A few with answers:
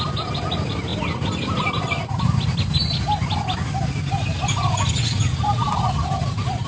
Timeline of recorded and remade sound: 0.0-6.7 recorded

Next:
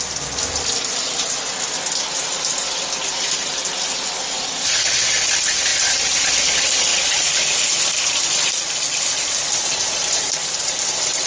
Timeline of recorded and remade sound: 0.0-11.3 recorded

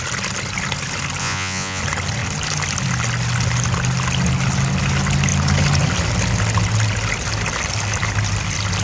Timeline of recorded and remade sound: 0.0-1.2 recorded; 1.2-1.8 remade; 1.8-8.8 recorded